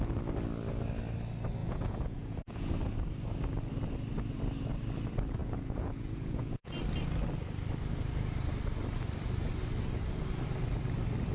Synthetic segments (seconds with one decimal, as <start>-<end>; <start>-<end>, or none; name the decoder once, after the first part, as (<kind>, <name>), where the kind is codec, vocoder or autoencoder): 1.6-2.7 (vocoder, Vocos); 5.4-6.7